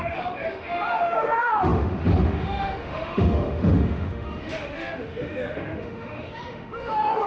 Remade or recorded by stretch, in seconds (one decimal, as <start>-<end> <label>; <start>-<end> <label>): 0.0-7.3 remade